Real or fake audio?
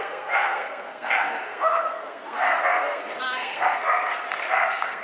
fake